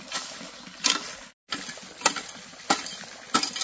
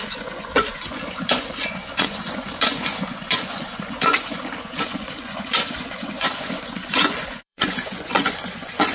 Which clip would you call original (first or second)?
first